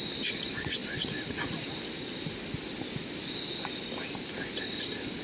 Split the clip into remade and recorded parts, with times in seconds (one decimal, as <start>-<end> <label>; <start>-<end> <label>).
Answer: 0.0-5.2 recorded